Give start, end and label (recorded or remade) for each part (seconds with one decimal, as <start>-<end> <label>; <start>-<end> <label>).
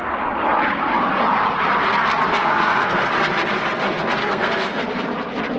0.0-2.3 recorded; 2.3-3.1 remade; 3.1-4.2 recorded; 4.2-4.8 remade; 4.8-5.6 recorded